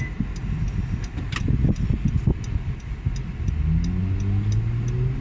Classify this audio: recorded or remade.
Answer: recorded